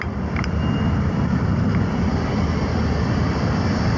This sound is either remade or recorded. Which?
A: recorded